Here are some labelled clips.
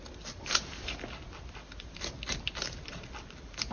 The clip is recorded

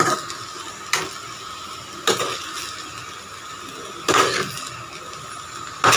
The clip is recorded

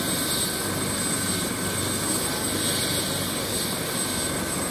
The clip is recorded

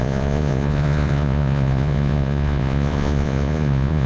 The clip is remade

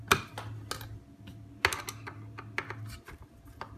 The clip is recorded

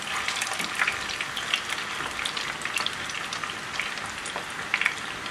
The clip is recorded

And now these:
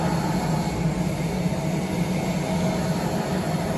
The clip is recorded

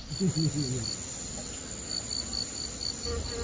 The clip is recorded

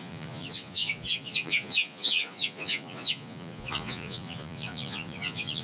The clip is remade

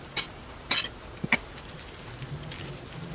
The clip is recorded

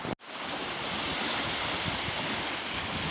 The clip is recorded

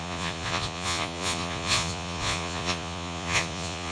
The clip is remade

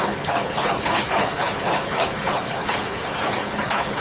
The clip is remade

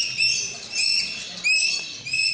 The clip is recorded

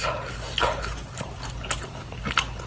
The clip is recorded